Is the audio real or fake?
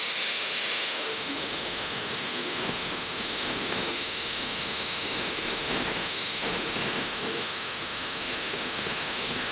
fake